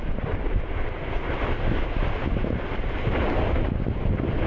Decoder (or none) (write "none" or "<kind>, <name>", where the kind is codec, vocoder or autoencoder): none